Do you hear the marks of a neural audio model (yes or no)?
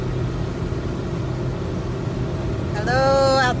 no